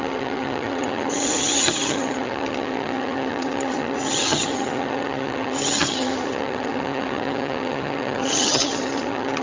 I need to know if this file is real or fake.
fake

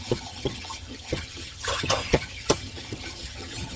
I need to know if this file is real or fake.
fake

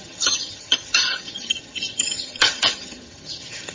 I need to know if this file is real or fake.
fake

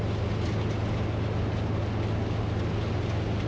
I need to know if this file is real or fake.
real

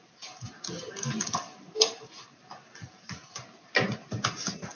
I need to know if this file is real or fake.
real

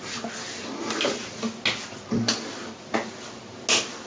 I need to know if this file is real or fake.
real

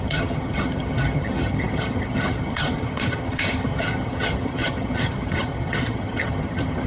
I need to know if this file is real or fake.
fake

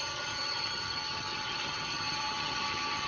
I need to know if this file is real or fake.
fake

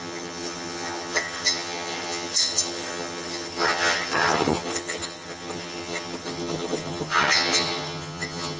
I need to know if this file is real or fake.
fake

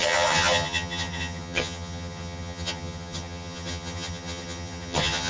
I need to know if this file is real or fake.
fake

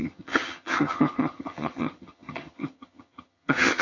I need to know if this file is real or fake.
fake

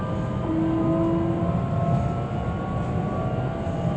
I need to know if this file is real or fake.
real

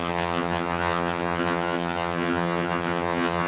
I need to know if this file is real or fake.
fake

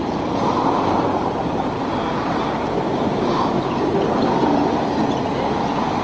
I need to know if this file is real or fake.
real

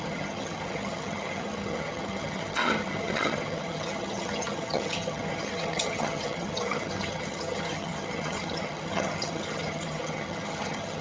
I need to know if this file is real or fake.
fake